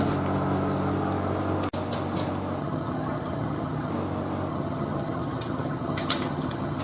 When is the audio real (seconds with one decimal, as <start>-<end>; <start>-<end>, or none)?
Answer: 0.0-2.6; 3.9-4.5